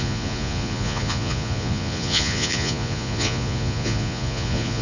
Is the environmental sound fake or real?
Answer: fake